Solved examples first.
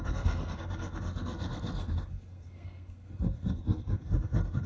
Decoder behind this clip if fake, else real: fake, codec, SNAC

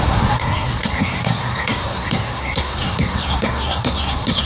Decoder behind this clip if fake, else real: fake, codec, SNAC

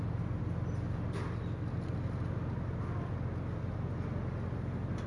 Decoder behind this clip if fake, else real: real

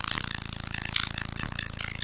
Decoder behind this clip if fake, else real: real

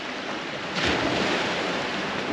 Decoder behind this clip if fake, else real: real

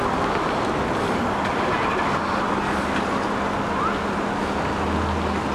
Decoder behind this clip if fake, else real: real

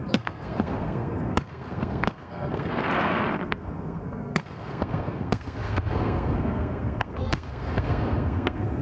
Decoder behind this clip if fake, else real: fake, codec, SNAC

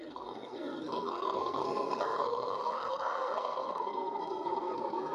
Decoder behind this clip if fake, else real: fake, codec, SNAC